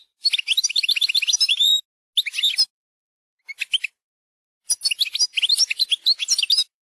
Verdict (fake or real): real